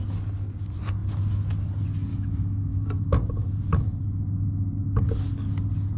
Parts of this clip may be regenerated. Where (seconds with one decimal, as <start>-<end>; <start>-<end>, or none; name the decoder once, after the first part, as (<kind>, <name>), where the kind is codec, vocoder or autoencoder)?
2.1-2.7 (autoencoder, DAC-VAE)